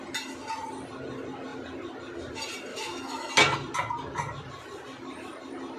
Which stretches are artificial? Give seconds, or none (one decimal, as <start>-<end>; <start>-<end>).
2.7-3.3